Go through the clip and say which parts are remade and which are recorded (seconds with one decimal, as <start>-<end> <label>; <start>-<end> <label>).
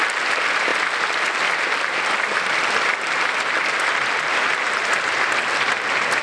0.0-6.2 recorded